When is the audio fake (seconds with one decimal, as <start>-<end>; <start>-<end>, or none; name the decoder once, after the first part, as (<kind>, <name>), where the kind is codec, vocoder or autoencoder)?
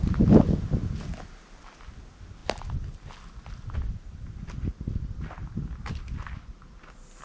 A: 2.4-5.0 (vocoder, BigVGAN v2)